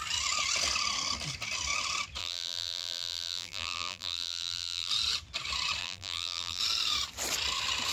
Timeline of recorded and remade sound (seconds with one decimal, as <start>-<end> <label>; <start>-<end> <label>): 0.0-2.2 recorded; 2.2-4.9 remade; 4.9-5.8 recorded; 5.8-6.6 remade; 6.6-7.9 recorded